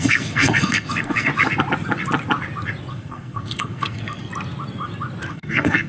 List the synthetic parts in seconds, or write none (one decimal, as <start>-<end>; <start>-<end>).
0.0-1.3; 2.9-4.3; 5.3-5.9